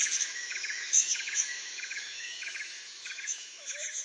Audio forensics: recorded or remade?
remade